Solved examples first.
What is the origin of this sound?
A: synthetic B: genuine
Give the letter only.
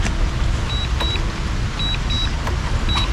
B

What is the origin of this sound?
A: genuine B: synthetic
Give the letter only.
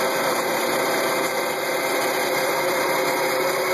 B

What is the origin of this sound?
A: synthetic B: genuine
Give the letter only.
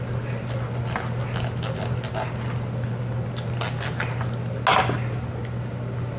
B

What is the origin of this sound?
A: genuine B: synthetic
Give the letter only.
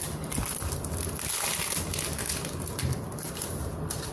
A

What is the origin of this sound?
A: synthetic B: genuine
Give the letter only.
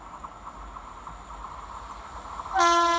B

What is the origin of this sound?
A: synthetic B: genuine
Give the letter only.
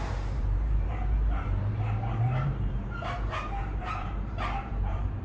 A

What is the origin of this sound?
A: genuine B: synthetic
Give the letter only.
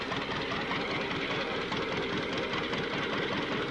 A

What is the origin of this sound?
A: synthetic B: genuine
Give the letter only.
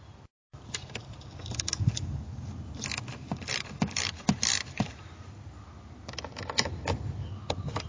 B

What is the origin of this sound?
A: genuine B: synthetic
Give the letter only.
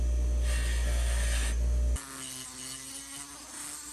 A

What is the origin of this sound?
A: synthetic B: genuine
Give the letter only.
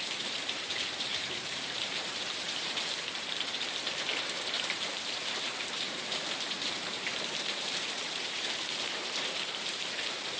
A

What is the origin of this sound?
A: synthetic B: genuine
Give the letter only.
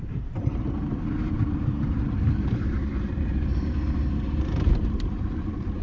A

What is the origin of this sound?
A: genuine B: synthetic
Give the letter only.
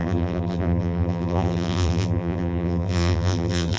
B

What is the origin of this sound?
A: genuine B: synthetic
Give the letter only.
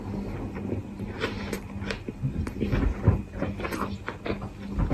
A